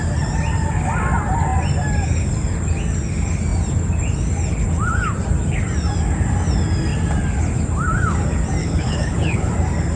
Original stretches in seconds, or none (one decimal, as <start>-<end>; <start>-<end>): 0.0-8.6; 9.5-10.0